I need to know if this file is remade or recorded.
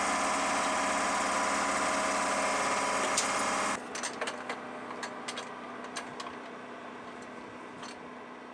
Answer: recorded